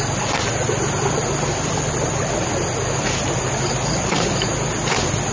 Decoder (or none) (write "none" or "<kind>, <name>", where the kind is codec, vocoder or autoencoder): none